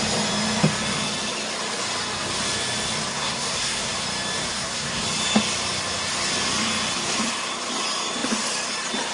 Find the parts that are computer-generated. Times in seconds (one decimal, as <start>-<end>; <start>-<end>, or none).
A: 3.1-4.0; 4.5-5.0